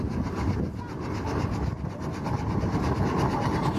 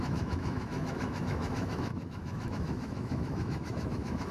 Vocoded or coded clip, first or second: second